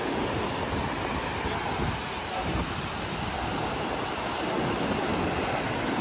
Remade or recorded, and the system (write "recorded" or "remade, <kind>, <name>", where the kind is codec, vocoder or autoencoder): recorded